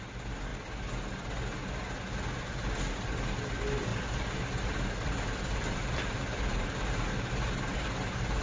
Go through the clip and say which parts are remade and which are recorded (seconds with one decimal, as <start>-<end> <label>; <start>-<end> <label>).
0.0-3.9 recorded; 3.9-6.9 remade; 6.9-8.4 recorded